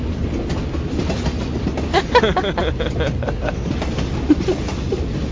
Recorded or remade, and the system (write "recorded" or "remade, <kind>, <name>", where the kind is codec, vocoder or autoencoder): recorded